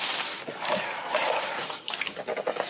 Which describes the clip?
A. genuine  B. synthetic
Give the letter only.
A